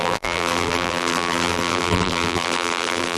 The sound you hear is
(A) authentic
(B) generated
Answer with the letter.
B